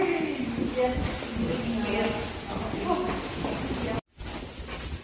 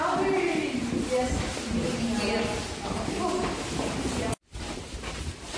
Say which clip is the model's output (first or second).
second